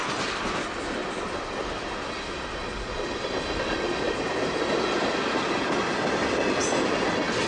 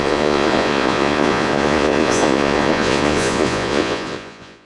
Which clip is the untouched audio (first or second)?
first